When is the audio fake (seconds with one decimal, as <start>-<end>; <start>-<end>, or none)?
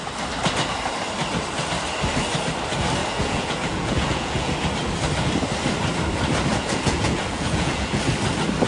3.0-4.5; 6.5-8.0